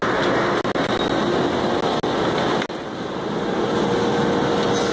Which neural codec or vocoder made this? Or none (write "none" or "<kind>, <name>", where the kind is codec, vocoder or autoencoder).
none